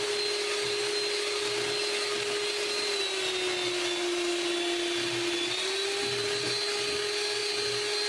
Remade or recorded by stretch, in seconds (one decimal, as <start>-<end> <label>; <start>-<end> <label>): 0.0-8.1 recorded

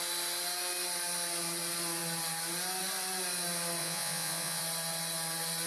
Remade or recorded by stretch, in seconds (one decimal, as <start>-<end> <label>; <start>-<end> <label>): 0.0-3.8 recorded; 3.8-4.6 remade; 4.6-5.7 recorded